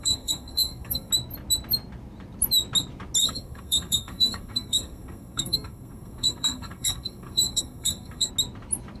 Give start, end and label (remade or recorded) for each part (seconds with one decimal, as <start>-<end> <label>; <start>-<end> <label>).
0.0-1.1 remade; 1.1-3.2 recorded; 3.2-8.3 remade; 8.3-9.0 recorded